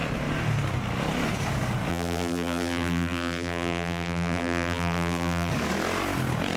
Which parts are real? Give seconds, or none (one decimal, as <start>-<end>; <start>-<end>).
0.0-1.9; 5.5-6.6